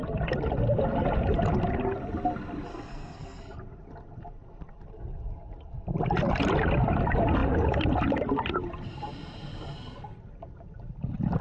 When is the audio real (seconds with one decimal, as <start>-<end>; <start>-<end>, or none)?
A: 0.0-2.7; 3.4-11.4